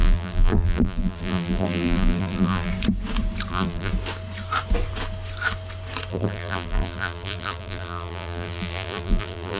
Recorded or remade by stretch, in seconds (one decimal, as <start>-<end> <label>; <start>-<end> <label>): 0.0-2.7 remade; 2.7-3.5 recorded; 3.5-3.9 remade; 3.9-6.1 recorded; 6.1-9.6 remade